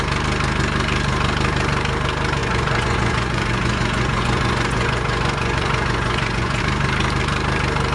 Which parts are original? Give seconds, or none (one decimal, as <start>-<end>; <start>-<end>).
0.0-2.4; 6.6-7.9